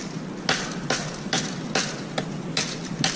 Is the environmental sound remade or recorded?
recorded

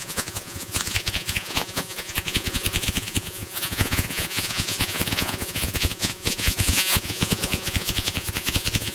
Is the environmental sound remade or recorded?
remade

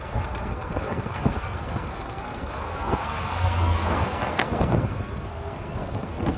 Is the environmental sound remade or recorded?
remade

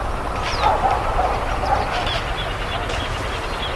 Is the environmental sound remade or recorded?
recorded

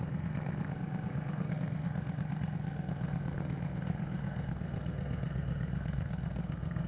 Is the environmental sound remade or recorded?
remade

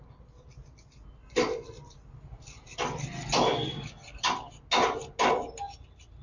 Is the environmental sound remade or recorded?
recorded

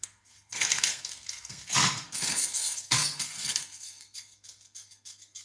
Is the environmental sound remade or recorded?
remade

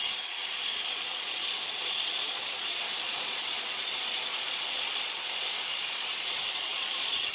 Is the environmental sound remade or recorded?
remade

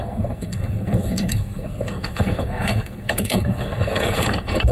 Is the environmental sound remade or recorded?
remade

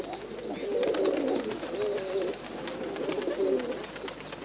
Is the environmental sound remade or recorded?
recorded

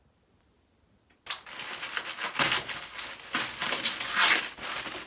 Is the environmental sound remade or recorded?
recorded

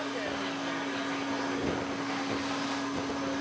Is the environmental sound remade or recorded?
recorded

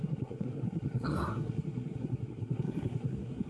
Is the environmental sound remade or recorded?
remade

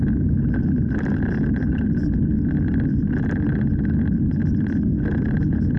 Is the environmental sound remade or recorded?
recorded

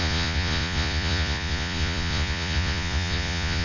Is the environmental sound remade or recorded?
remade